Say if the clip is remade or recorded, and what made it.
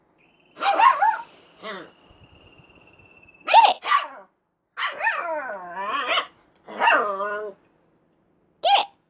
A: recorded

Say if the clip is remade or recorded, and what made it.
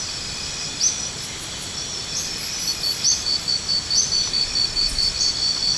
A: recorded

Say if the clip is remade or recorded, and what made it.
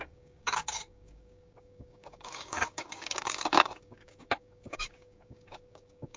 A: remade, codec, DAC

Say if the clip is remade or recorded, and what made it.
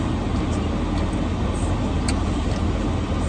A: recorded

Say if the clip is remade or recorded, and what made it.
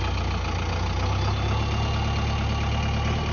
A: recorded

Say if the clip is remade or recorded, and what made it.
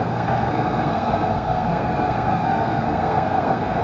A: remade, codec, SNAC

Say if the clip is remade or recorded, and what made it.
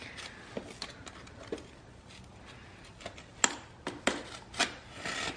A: recorded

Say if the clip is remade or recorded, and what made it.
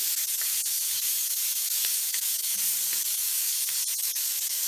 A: remade, codec, DAC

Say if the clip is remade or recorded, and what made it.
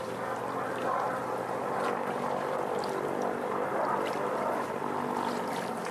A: recorded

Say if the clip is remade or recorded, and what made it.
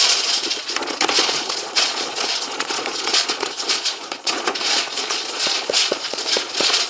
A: remade, vocoder, Vocos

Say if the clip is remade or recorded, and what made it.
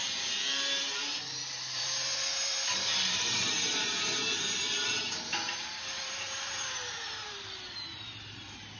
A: remade, vocoder, BigVGAN v2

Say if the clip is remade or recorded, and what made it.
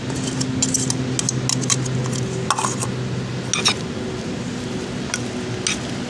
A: recorded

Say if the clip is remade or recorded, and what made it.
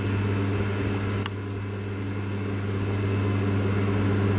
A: recorded